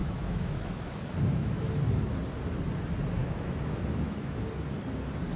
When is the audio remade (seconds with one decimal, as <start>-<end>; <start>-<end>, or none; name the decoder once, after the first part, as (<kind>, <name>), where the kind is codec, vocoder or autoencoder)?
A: 0.0-1.8 (autoencoder, DAC-VAE); 3.2-4.4